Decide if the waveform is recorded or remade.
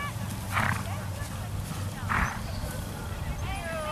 recorded